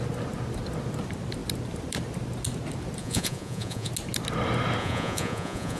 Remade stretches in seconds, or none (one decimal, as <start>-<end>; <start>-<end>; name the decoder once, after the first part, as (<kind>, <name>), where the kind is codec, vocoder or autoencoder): 3.0-3.9 (vocoder, Vocos); 4.8-5.8